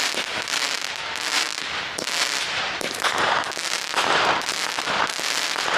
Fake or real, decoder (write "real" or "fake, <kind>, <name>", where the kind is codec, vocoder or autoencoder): fake, vocoder, BigVGAN v2